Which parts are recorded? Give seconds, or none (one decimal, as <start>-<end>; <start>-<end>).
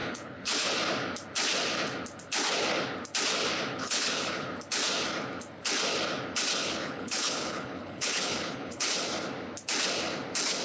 0.7-3.8; 4.5-6.6; 8.9-10.6